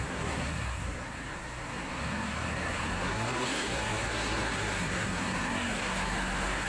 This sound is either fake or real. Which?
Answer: fake